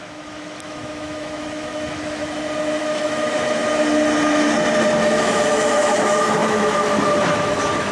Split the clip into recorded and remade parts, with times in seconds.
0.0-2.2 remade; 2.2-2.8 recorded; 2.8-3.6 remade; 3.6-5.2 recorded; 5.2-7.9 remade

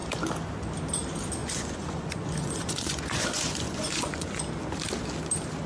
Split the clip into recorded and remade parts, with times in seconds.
0.0-1.4 recorded; 1.4-4.4 remade; 4.4-5.7 recorded